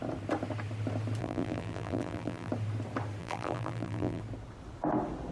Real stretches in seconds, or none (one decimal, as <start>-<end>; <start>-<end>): 0.0-1.2; 2.5-3.2; 4.2-5.3